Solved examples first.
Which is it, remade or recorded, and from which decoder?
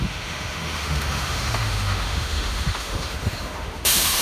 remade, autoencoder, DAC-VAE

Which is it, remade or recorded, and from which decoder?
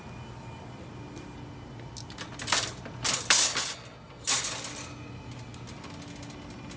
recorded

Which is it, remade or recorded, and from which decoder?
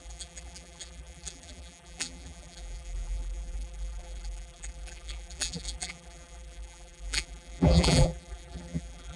remade, vocoder, BigVGAN v2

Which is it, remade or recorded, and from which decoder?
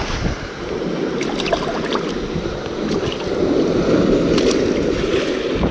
recorded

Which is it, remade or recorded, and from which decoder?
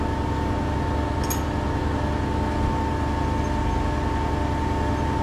recorded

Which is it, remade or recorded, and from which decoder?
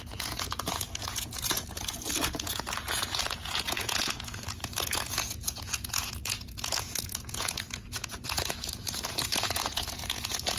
remade, vocoder, Vocos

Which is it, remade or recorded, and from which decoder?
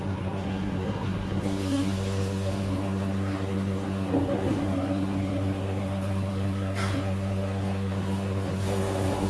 remade, codec, SNAC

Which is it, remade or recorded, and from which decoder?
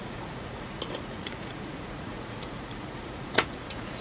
remade, vocoder, Vocos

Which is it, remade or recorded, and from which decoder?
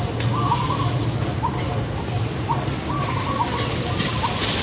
recorded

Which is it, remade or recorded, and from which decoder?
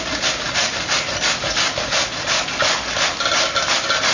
recorded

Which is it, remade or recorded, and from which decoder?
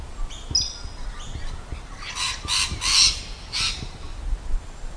recorded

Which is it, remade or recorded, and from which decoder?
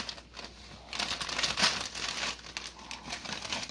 recorded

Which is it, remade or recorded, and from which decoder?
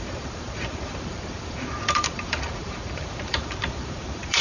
remade, vocoder, BigVGAN v2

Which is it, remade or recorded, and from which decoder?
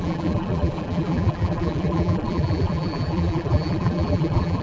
remade, vocoder, BigVGAN v2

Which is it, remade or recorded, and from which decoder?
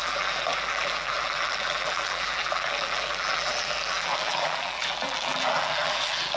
remade, vocoder, BigVGAN v2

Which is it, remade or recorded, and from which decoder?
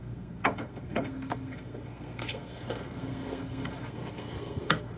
remade, codec, SNAC